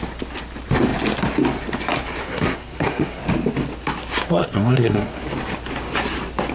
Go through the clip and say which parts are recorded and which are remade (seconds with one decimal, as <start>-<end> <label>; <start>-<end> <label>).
0.0-2.2 recorded; 2.2-3.2 remade; 3.2-4.4 recorded; 4.4-5.2 remade; 5.2-6.5 recorded